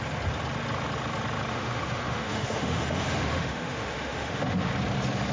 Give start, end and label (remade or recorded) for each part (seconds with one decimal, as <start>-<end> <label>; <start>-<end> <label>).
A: 0.0-1.5 recorded; 1.5-4.7 remade; 4.7-5.3 recorded